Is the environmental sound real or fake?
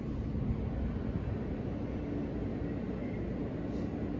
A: real